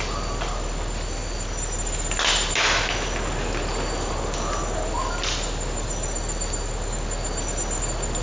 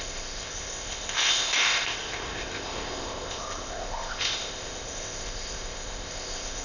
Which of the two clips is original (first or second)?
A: first